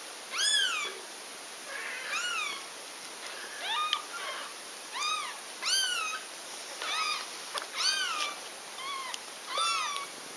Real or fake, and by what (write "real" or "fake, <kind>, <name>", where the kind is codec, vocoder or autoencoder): real